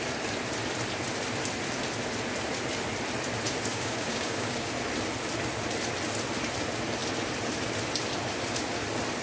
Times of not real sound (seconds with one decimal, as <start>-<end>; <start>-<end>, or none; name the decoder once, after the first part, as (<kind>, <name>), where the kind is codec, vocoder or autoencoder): 3.7-4.7 (codec, DAC)